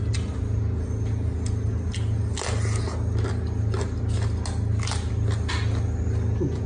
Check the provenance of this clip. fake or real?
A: real